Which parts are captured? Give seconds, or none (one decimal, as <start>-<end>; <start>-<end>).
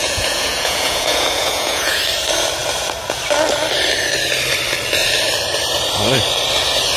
2.0-7.0